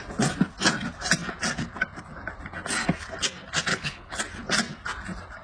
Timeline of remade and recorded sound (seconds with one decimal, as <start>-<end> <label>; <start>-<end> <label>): 0.0-3.7 recorded; 3.7-4.2 remade; 4.2-5.4 recorded